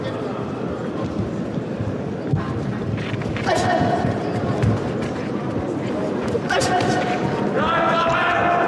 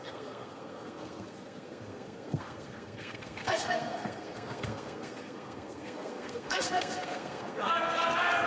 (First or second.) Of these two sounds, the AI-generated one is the second